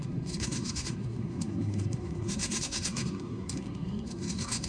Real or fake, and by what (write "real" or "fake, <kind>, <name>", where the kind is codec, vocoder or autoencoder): fake, codec, SNAC